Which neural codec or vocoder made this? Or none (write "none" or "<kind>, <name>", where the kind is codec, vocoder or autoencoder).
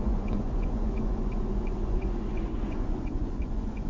vocoder, Vocos